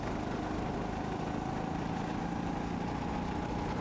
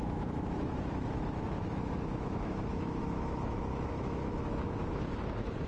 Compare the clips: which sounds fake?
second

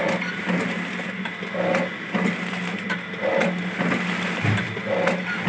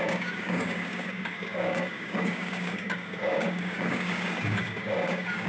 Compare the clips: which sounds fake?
second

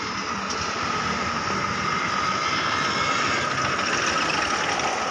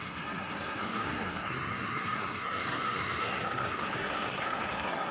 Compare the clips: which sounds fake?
second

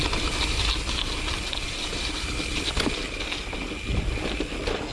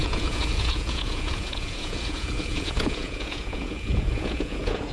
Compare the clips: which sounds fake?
second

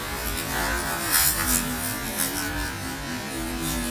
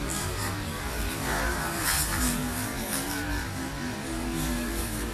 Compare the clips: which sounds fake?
second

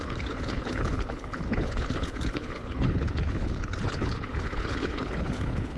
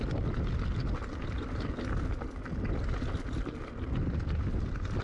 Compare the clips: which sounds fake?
first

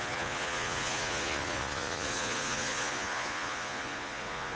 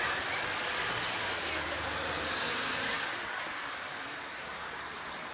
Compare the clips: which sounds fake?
first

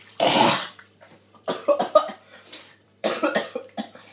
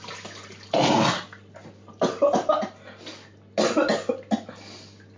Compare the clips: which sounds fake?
first